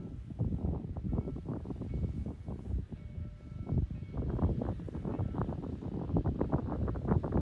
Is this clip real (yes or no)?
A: yes